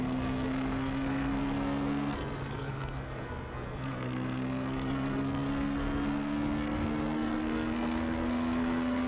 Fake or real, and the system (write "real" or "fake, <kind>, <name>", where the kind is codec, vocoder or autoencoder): fake, codec, SNAC